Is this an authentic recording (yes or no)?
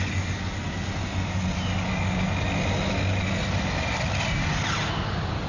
yes